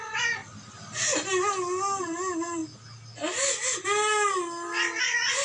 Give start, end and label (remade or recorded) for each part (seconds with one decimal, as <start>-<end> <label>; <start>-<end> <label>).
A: 0.0-0.4 remade; 0.4-2.0 recorded; 2.0-2.6 remade; 2.6-5.0 recorded; 5.0-5.4 remade